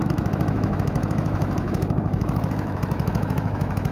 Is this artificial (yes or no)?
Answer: yes